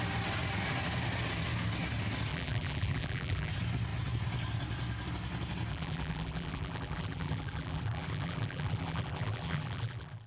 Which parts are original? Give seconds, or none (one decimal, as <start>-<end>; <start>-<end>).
0.0-2.3; 3.5-5.7